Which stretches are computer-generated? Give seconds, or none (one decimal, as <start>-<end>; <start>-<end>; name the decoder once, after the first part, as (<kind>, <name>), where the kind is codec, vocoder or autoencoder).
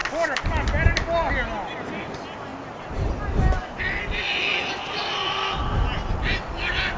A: none